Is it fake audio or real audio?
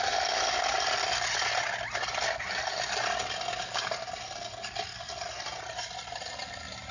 real